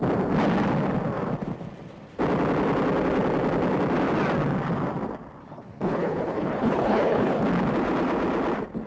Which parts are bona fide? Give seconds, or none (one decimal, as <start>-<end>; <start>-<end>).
0.0-5.4; 7.4-8.9